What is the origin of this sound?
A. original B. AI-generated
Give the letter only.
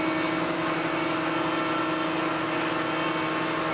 A